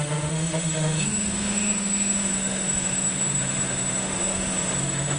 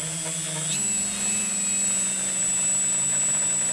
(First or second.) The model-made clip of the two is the first